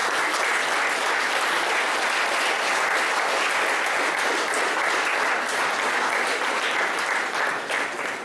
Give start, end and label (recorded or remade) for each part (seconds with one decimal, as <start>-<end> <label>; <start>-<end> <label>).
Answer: 0.0-8.2 recorded